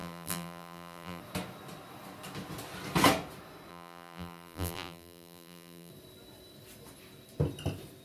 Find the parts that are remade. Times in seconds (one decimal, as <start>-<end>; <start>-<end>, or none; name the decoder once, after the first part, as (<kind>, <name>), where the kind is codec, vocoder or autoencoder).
0.0-1.2 (vocoder, BigVGAN v2); 3.7-5.9